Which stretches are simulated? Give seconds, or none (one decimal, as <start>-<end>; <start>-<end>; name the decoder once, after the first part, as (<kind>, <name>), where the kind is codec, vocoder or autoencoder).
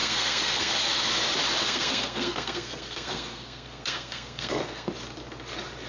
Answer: 0.0-0.7 (codec, SNAC); 1.7-4.9